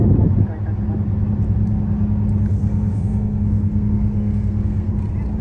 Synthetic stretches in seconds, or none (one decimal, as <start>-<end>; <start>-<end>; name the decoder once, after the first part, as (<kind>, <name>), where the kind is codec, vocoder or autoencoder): 2.5-4.9 (codec, SNAC)